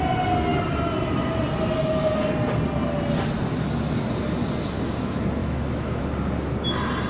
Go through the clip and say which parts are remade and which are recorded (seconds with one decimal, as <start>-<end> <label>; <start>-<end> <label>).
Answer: 0.0-5.4 recorded; 5.4-6.0 remade; 6.0-7.1 recorded